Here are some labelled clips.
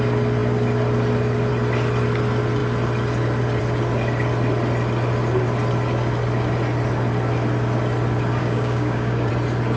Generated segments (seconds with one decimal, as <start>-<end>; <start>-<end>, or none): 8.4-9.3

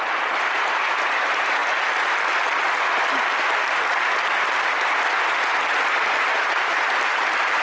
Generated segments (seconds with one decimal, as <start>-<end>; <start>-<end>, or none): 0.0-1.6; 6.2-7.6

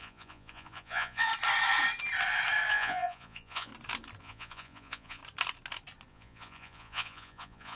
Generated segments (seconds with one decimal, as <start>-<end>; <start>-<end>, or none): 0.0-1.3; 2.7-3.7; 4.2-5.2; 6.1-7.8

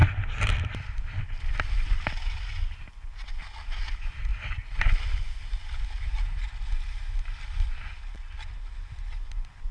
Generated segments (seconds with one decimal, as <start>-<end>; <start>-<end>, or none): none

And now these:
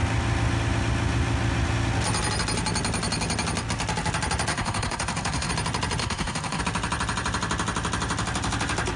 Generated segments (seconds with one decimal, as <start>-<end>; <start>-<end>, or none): 4.5-5.5; 6.0-6.6